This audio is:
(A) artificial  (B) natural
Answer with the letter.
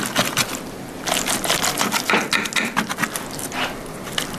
B